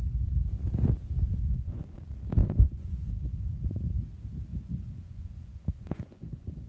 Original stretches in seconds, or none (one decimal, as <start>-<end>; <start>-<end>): 0.0-1.5; 2.0-2.4; 4.0-4.5